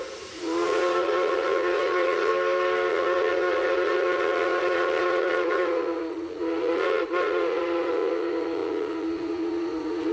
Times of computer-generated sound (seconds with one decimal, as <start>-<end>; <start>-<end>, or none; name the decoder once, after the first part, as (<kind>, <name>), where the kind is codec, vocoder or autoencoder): 0.0-2.3 (vocoder, Vocos); 2.9-10.1